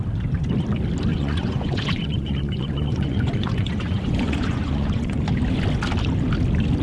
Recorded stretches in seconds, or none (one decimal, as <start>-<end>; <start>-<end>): 0.0-1.1; 5.2-6.8